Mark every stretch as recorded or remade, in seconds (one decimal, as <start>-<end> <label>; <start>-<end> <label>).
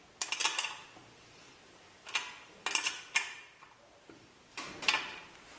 0.0-5.6 recorded